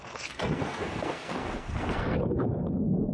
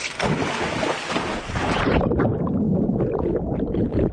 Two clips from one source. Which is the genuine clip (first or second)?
second